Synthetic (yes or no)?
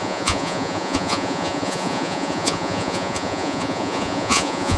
yes